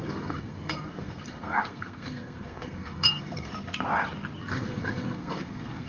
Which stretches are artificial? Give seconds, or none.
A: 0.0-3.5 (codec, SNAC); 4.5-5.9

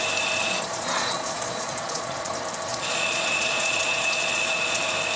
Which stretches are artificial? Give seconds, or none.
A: 0.4-2.3 (vocoder, Vocos); 2.7-4.8

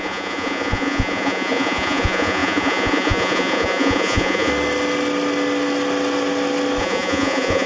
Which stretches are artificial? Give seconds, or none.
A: 0.0-4.5 (vocoder, Vocos); 6.8-7.7

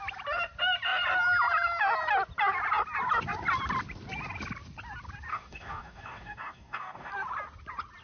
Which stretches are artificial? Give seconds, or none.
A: 5.3-7.1 (codec, DAC)

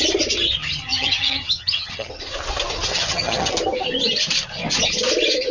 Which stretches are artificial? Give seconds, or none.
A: 0.6-2.1 (vocoder, HiFi-GAN); 2.9-3.5